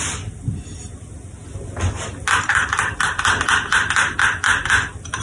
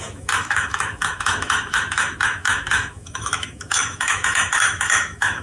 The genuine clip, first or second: first